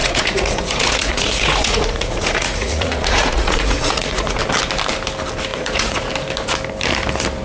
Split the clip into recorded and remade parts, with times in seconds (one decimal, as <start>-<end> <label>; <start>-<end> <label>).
0.0-4.4 remade; 4.4-5.5 recorded; 5.5-6.1 remade; 6.1-7.4 recorded